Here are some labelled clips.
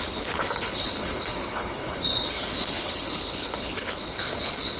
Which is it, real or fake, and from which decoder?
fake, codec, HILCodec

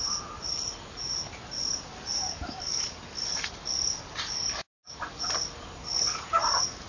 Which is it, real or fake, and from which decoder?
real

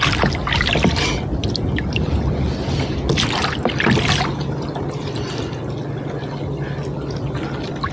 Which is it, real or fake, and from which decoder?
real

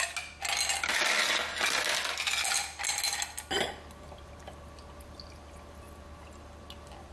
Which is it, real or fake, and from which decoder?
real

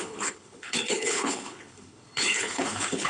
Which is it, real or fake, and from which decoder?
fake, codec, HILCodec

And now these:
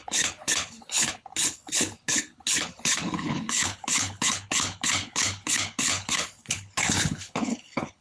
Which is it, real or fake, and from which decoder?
fake, codec, HILCodec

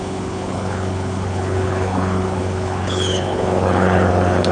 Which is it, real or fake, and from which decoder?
fake, codec, HILCodec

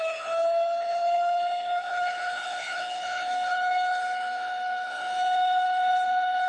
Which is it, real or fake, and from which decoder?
fake, codec, HILCodec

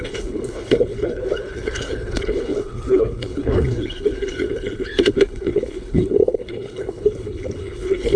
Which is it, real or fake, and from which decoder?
fake, codec, HILCodec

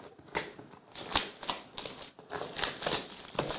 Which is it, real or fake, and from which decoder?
real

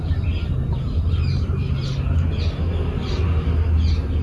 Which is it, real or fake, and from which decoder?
real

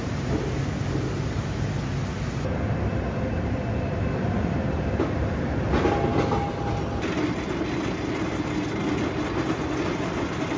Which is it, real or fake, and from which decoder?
real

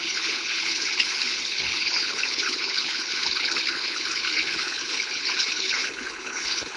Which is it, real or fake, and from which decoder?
fake, codec, HILCodec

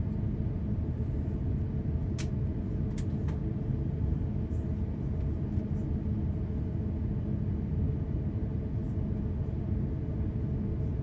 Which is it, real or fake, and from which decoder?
real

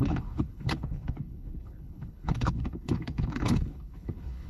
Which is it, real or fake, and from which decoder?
fake, codec, HILCodec